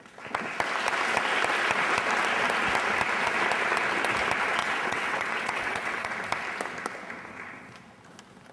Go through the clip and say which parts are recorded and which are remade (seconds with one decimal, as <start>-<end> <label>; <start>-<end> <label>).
0.0-4.6 recorded; 4.6-6.1 remade; 6.1-8.5 recorded